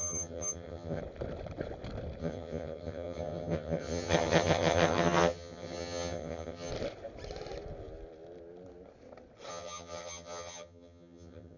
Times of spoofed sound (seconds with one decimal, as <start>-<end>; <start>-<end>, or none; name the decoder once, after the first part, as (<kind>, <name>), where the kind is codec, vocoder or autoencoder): 0.0-1.0 (vocoder, HiFi-GAN); 2.2-6.7; 9.5-11.6